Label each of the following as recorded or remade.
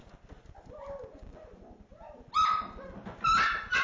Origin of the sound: recorded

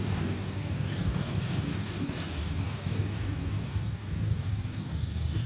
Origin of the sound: remade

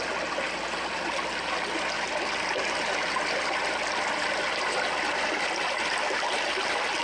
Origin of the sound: recorded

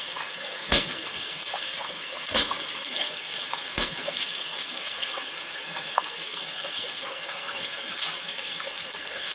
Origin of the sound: remade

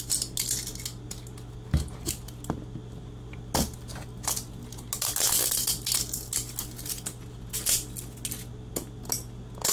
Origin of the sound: recorded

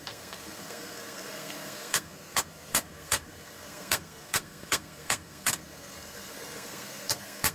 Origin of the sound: remade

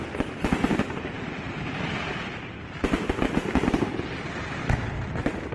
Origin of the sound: remade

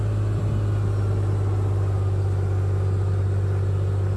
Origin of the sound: recorded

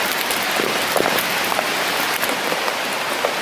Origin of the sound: remade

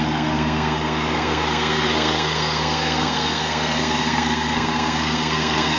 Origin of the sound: remade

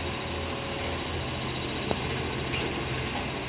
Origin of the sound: recorded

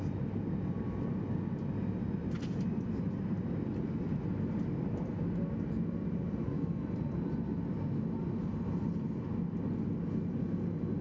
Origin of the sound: recorded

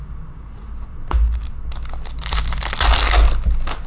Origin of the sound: recorded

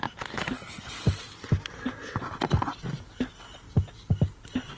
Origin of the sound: recorded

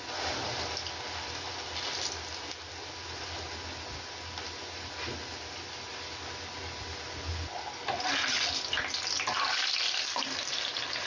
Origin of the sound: recorded